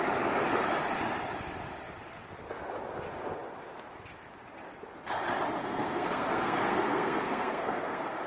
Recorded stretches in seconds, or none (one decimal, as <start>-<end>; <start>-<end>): 0.0-5.6